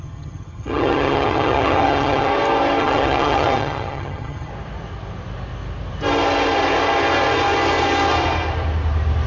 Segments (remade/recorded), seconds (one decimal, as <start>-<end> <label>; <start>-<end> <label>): 0.0-2.3 remade; 2.3-2.8 recorded; 2.8-4.5 remade; 4.5-9.3 recorded